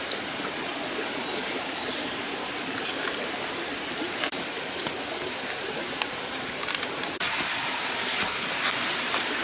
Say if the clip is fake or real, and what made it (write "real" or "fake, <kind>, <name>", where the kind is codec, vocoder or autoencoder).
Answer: fake, vocoder, BigVGAN v2